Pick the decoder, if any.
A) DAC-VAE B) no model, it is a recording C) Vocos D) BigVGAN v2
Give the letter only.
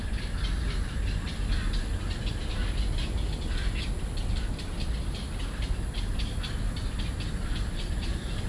B